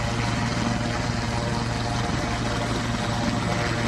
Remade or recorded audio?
recorded